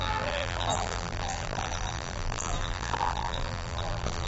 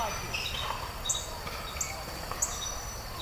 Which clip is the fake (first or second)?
first